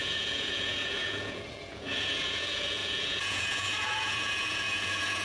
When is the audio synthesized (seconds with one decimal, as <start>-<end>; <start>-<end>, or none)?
0.0-5.2